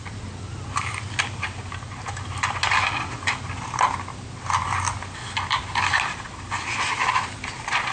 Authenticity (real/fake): real